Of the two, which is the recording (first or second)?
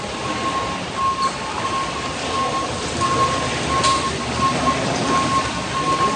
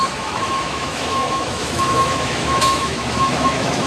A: first